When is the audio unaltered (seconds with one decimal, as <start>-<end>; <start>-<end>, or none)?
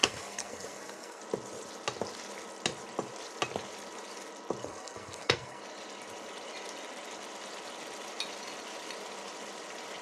1.2-4.6; 5.6-10.0